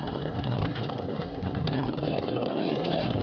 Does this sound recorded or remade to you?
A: remade